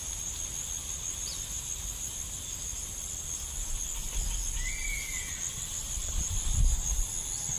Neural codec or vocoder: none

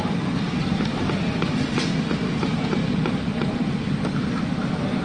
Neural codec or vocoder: none